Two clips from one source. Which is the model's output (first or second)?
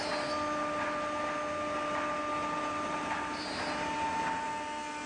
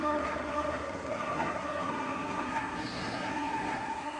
second